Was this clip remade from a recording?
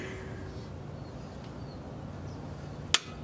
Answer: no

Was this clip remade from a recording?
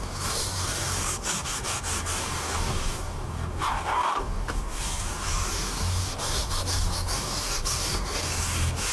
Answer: yes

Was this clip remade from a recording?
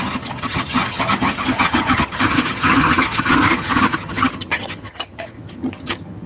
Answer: yes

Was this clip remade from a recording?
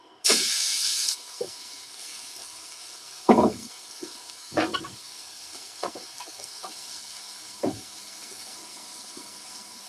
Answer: yes